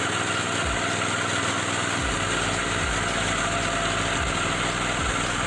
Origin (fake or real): real